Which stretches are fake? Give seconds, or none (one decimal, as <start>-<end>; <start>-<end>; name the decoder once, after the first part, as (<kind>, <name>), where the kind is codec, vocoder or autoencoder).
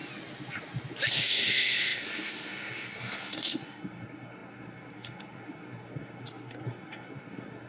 1.1-7.7 (codec, SNAC)